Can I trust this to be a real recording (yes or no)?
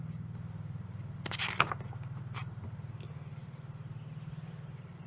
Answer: yes